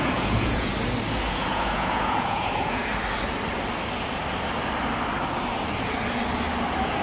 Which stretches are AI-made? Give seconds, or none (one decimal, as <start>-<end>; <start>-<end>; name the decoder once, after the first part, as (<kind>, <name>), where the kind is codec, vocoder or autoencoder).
0.0-0.7 (vocoder, Vocos); 1.3-2.8